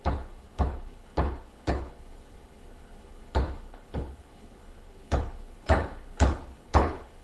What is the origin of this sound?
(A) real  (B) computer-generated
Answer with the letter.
B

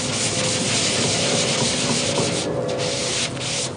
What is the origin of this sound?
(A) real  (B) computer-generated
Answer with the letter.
A